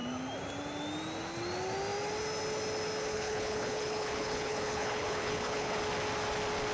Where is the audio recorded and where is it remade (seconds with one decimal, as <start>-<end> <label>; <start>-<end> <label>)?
0.0-3.1 recorded; 3.1-5.8 remade; 5.8-6.7 recorded